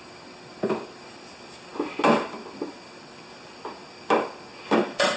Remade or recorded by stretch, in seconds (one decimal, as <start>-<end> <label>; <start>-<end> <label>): 0.0-5.2 recorded